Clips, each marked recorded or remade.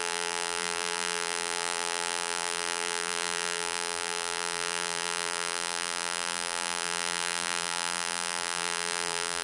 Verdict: remade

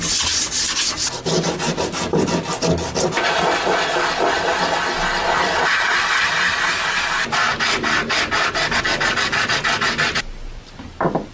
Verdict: recorded